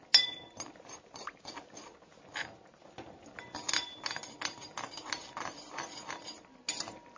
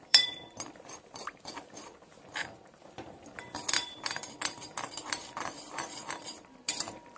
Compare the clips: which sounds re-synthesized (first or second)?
second